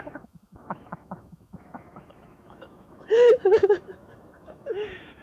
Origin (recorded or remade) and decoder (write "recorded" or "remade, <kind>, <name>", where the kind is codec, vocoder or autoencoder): remade, autoencoder, DAC-VAE